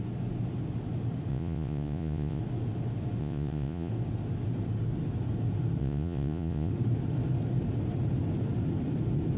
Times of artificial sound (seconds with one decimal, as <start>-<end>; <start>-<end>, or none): 1.3-2.4; 3.2-3.9; 5.8-6.7